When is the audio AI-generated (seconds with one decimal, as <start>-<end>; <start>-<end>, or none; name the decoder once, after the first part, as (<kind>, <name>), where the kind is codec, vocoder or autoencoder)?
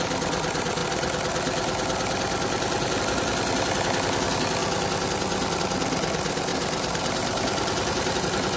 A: 6.5-8.2 (vocoder, BigVGAN v2)